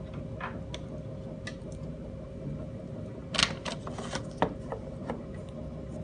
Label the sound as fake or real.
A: real